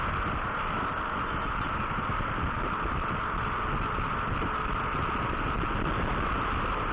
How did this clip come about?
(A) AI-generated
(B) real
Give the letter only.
B